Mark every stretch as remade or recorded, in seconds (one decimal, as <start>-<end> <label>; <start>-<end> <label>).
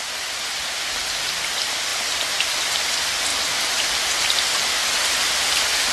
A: 0.0-5.9 recorded